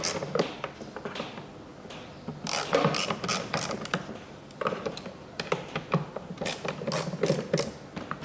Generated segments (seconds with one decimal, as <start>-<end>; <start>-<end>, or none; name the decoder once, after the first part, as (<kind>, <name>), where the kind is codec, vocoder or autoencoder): 1.7-5.8 (vocoder, BigVGAN v2)